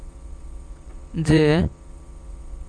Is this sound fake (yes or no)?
yes